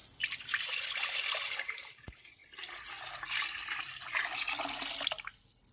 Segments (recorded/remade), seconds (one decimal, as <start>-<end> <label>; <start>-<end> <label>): 0.0-5.7 recorded